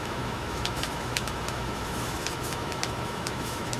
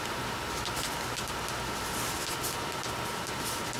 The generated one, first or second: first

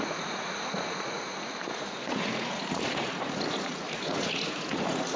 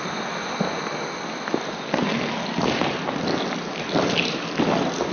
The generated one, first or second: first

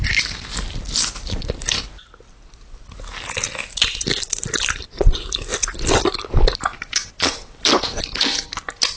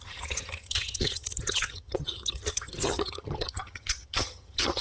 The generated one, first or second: second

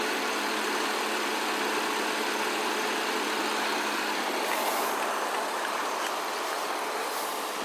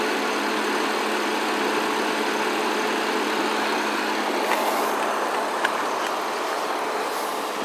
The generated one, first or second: first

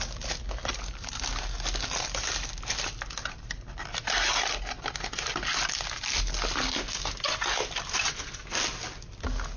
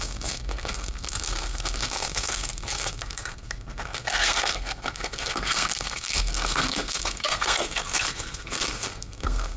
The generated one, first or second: second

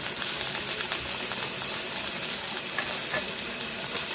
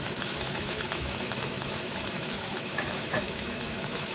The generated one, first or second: second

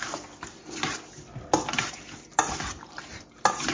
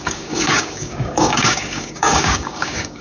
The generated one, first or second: second